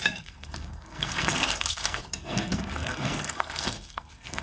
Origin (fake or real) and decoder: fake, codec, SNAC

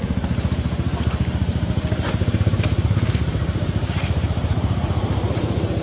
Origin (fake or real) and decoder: fake, vocoder, BigVGAN v2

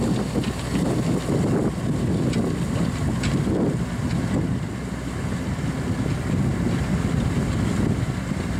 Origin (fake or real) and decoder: real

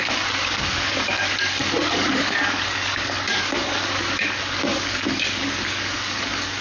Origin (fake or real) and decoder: fake, codec, DAC